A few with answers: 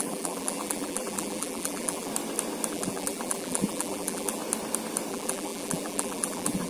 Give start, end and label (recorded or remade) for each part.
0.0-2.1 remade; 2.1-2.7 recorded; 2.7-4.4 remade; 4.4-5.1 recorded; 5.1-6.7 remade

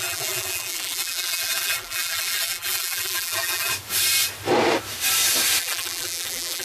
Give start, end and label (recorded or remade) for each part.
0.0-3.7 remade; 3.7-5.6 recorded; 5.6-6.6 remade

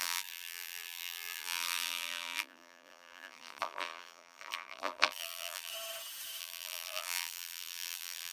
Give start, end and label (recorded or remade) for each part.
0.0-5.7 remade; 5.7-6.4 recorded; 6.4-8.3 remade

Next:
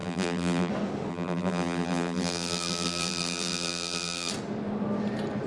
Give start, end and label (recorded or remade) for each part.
0.0-0.7 remade; 0.7-1.1 recorded; 1.1-4.3 remade; 4.3-5.5 recorded

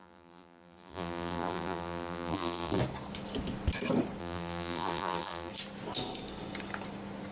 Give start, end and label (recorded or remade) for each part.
0.0-2.8 remade; 2.8-4.2 recorded; 4.2-5.5 remade; 5.5-7.3 recorded